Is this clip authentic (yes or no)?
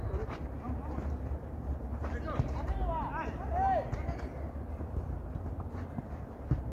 no